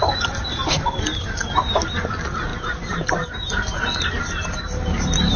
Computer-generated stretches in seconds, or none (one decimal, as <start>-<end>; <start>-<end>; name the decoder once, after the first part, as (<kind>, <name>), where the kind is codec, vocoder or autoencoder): 0.0-0.6 (vocoder, BigVGAN v2); 1.2-5.4